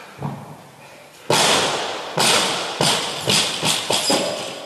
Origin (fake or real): real